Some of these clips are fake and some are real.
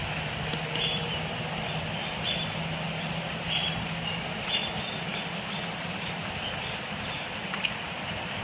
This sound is real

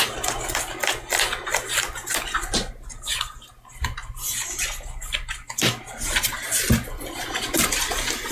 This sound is real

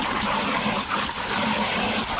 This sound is real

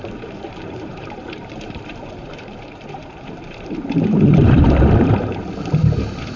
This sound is fake